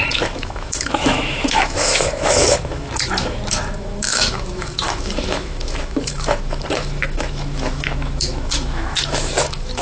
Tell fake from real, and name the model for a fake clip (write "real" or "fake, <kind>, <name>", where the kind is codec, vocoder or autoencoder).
fake, autoencoder, DAC-VAE